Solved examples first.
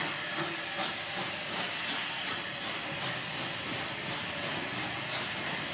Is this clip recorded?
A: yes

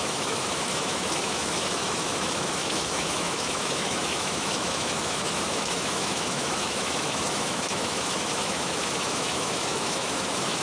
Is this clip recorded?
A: no